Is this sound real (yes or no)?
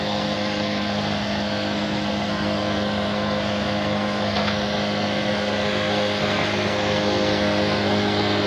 no